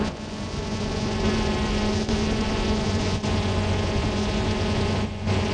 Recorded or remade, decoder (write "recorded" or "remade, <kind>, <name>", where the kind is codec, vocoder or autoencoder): remade, vocoder, Vocos